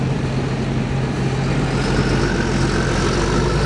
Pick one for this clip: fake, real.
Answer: real